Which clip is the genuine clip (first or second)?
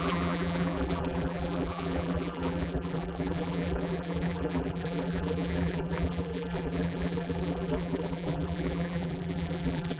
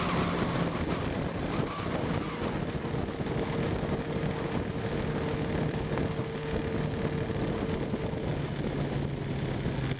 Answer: second